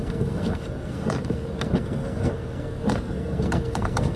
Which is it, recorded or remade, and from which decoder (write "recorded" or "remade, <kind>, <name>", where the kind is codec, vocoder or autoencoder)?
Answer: remade, codec, SNAC